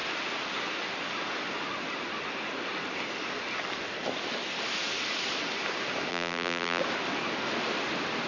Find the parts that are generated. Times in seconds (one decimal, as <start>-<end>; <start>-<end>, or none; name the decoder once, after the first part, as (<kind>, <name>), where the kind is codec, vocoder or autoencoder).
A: 6.1-6.8 (vocoder, BigVGAN v2)